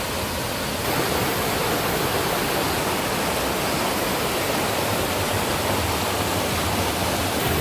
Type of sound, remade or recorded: recorded